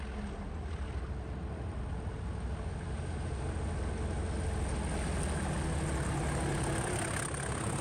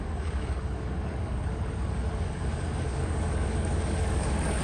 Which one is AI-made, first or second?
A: second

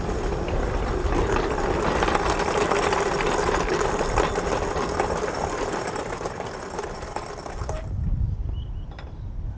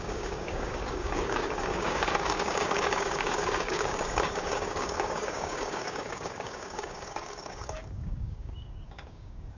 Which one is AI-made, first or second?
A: second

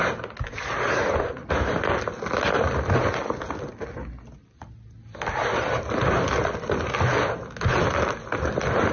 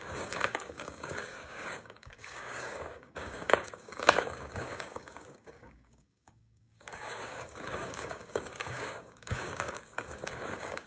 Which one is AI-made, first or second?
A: second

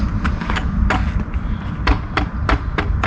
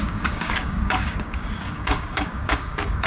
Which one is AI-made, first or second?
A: second